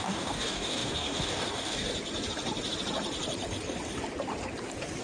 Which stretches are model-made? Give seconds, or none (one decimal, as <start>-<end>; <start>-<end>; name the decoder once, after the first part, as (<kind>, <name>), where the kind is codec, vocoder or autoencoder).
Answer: 0.0-1.9 (codec, DAC)